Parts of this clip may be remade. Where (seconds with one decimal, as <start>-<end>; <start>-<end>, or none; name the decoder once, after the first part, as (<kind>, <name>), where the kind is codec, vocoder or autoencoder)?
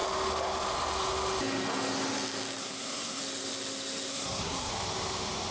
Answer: 2.6-3.2 (codec, SNAC); 4.1-4.7